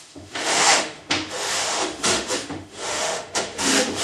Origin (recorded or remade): remade